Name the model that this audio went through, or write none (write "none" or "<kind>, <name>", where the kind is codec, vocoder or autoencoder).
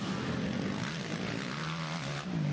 none